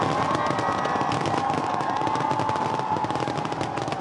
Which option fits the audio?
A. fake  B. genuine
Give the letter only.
B